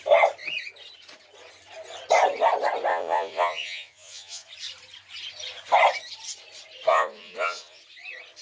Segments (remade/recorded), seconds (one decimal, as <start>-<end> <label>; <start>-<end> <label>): 0.0-2.9 recorded; 2.9-4.5 remade; 4.5-6.9 recorded; 6.9-7.8 remade; 7.8-8.4 recorded